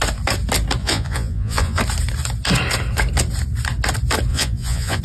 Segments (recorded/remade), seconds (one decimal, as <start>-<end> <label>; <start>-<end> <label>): 0.0-0.8 recorded; 0.8-1.8 remade; 1.8-4.3 recorded; 4.3-5.0 remade